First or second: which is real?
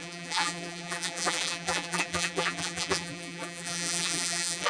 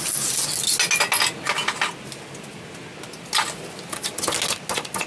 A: second